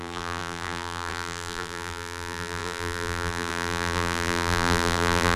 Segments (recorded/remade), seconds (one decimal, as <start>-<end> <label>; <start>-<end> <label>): 0.0-5.4 remade